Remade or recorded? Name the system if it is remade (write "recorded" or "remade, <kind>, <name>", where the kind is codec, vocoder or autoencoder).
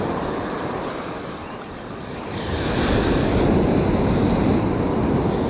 recorded